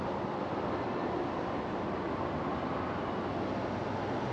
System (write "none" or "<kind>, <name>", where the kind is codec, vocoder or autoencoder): none